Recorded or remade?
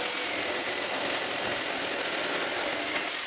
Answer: recorded